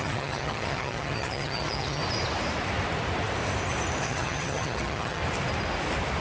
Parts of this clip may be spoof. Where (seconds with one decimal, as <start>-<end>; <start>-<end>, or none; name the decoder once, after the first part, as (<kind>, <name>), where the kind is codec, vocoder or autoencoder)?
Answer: 0.0-2.0 (vocoder, HiFi-GAN); 4.0-5.2